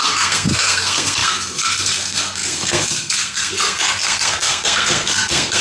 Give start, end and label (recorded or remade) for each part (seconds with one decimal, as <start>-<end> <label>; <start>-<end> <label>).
0.0-5.6 remade